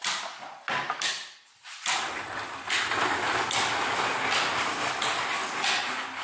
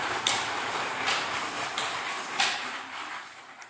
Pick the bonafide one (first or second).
first